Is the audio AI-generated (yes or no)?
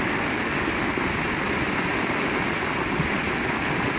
no